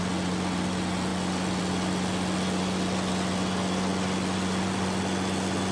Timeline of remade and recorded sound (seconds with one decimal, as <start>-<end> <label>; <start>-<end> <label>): 0.0-5.7 recorded